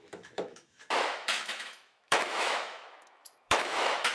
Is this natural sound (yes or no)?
no